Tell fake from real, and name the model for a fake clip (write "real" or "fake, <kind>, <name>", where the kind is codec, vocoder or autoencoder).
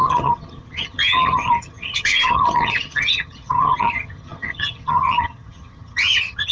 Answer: fake, vocoder, HiFi-GAN